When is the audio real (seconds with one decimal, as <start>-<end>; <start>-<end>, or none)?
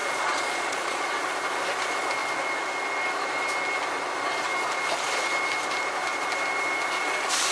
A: 1.1-7.5